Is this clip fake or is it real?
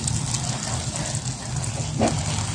real